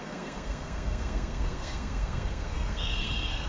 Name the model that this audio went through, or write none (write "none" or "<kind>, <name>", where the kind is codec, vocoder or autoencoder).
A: codec, SNAC